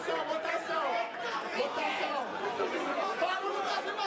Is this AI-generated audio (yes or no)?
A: yes